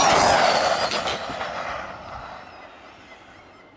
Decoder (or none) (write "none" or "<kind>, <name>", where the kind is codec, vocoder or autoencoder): none